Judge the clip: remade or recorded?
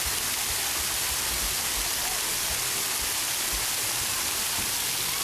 recorded